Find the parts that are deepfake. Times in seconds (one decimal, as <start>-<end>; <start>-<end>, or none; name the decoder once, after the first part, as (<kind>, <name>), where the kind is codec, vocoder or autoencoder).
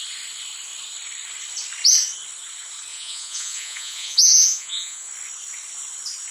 2.9-5.1 (vocoder, Vocos)